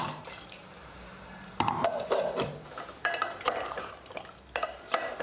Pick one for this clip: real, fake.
fake